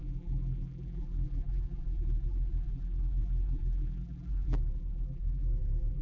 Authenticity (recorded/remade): remade